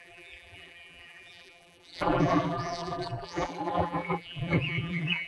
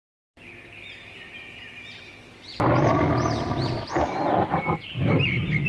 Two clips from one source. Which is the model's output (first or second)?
first